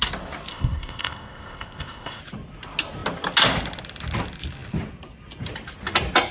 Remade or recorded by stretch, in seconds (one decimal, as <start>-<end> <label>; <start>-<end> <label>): 0.0-0.5 recorded; 0.5-2.2 remade; 2.2-6.3 recorded